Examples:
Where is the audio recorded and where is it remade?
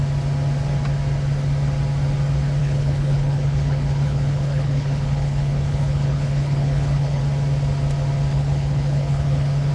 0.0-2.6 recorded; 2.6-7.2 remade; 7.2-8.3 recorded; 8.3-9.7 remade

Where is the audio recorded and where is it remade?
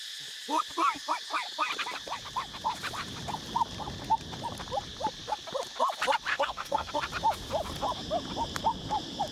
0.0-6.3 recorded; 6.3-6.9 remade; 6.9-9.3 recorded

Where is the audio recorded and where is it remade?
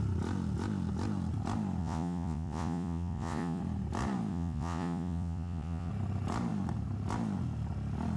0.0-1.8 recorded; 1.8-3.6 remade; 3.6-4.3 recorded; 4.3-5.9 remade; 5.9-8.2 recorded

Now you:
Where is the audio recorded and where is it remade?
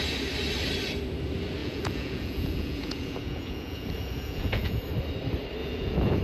0.0-1.6 recorded; 1.6-4.8 remade; 4.8-5.6 recorded; 5.6-6.2 remade